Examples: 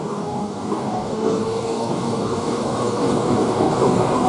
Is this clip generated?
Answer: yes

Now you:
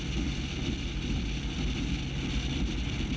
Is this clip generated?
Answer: no